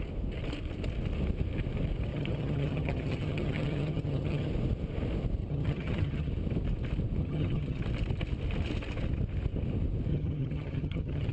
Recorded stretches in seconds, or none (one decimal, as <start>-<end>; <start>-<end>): 0.0-2.1; 4.5-5.4; 6.3-7.2; 7.8-10.1